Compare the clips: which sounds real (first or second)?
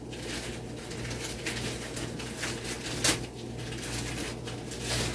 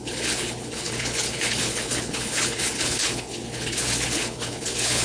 first